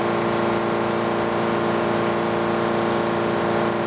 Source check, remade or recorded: recorded